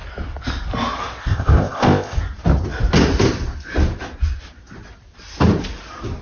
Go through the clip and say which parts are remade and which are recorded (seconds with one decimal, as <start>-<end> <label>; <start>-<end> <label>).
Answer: 0.0-1.2 recorded; 1.2-2.2 remade; 2.2-6.2 recorded